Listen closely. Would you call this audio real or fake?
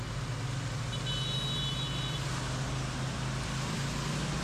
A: real